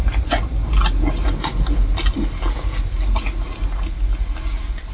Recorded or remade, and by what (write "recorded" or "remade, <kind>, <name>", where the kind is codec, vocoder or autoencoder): recorded